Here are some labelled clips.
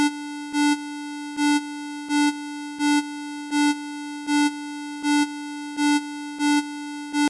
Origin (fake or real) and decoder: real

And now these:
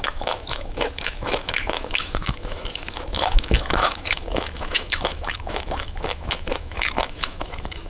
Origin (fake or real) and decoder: fake, autoencoder, DAC-VAE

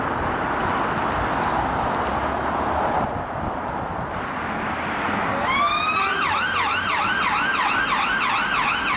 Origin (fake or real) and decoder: real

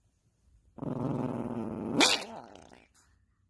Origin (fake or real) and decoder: real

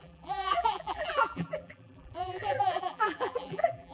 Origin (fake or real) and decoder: fake, vocoder, BigVGAN v2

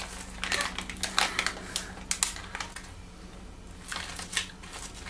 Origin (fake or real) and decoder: real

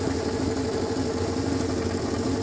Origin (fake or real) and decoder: real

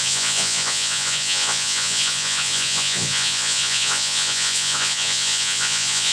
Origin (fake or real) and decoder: fake, vocoder, Vocos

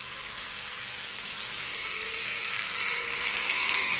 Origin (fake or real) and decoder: fake, codec, SNAC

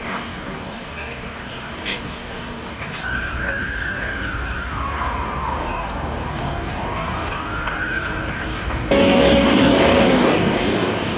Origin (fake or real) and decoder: fake, codec, DAC